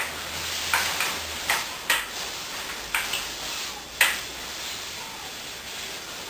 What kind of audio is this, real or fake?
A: real